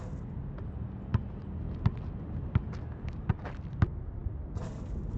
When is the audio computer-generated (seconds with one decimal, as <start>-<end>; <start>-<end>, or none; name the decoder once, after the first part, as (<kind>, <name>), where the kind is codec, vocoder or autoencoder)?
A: none